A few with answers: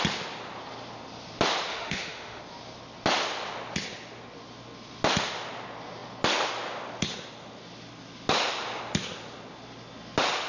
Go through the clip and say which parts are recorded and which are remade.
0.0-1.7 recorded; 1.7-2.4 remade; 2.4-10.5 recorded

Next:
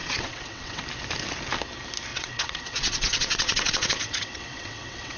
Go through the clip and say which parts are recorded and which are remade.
0.0-0.8 remade; 0.8-2.1 recorded; 2.1-5.2 remade

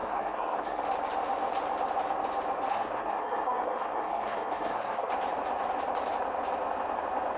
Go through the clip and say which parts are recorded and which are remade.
0.0-0.8 remade; 0.8-2.7 recorded; 2.7-5.1 remade; 5.1-7.4 recorded

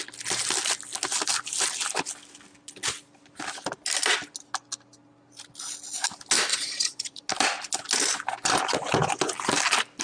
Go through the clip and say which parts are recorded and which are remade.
0.0-6.5 recorded; 6.5-7.2 remade; 7.2-10.0 recorded